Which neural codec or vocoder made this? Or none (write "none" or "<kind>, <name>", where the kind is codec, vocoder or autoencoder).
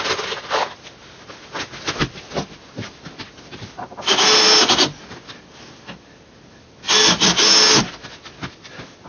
none